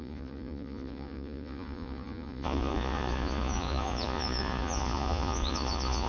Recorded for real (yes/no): no